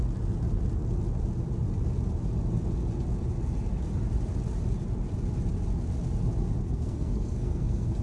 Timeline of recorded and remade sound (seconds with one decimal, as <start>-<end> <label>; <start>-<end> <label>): 0.0-6.6 recorded; 6.6-8.0 remade